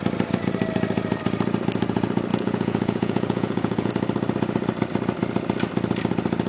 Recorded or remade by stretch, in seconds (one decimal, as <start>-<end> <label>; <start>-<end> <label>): 0.0-2.3 recorded; 2.3-3.9 remade; 3.9-6.5 recorded

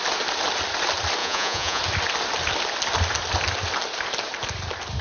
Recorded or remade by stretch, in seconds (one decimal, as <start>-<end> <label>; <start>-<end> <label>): 0.0-1.2 recorded; 1.2-1.8 remade; 1.8-5.0 recorded

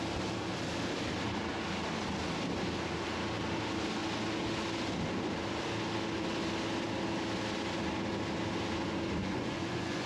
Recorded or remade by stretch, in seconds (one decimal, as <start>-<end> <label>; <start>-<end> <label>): 0.0-9.2 recorded; 9.2-10.1 remade

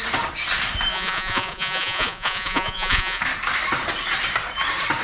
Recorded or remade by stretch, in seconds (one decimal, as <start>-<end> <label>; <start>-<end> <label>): 0.0-0.9 recorded; 0.9-3.2 remade; 3.2-5.0 recorded

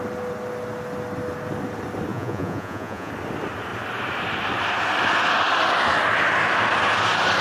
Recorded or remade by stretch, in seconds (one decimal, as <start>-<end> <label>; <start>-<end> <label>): 0.0-2.1 recorded; 2.1-3.1 remade; 3.1-7.4 recorded

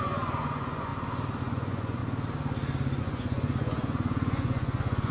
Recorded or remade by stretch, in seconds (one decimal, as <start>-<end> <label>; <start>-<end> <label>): 0.0-0.9 remade; 0.9-1.4 recorded; 1.4-2.0 remade; 2.0-3.0 recorded; 3.0-5.1 remade